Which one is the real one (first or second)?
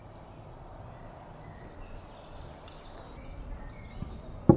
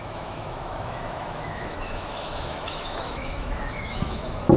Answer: first